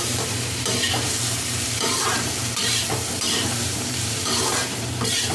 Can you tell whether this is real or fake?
fake